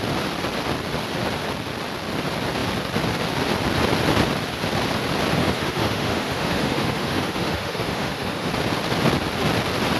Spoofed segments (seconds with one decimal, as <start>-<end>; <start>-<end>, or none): 5.4-8.5